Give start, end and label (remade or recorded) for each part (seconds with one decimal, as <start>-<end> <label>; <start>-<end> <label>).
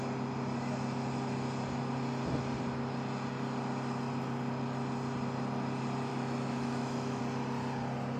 0.0-6.1 recorded; 6.1-7.2 remade; 7.2-8.2 recorded